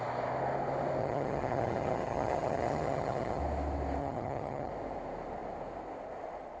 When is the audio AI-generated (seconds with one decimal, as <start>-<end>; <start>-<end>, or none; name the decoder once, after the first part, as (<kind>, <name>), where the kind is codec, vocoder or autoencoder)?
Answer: 1.0-3.4 (vocoder, HiFi-GAN); 4.0-4.7